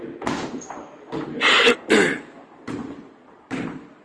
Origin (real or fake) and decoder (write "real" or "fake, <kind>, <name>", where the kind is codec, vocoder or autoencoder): real